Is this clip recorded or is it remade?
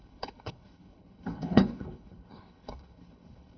remade